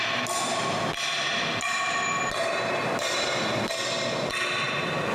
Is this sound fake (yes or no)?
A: no